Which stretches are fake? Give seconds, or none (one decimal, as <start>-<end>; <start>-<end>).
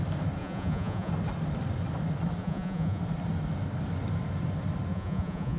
0.4-1.1; 2.4-3.0; 4.9-5.6